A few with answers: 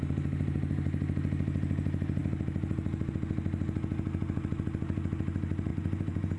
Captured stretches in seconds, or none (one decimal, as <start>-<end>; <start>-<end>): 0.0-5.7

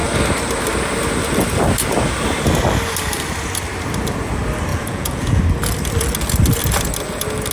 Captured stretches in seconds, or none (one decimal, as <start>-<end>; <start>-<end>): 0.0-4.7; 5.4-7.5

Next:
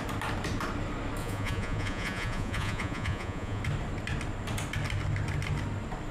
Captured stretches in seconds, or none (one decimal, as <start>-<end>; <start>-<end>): 0.0-1.2; 3.6-6.1

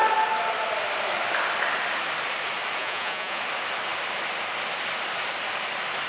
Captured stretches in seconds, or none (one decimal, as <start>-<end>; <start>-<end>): 0.0-2.8; 3.4-6.1

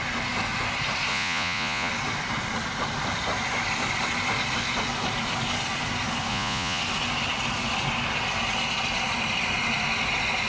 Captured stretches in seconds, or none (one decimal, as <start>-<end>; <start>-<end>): 0.0-1.1; 1.9-6.3; 6.8-10.5

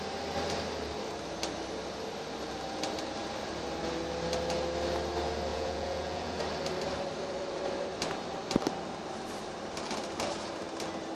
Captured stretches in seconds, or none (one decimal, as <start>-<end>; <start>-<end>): 0.0-5.5; 6.4-11.1

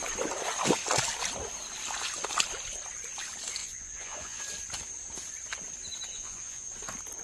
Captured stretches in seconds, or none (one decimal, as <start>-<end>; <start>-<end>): 0.0-3.6; 4.4-6.1; 6.7-7.2